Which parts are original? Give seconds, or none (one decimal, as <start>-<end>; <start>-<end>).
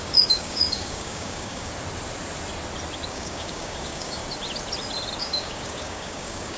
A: 1.7-3.1; 4.2-5.2